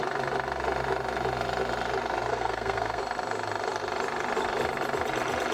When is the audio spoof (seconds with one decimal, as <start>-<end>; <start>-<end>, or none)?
2.3-3.0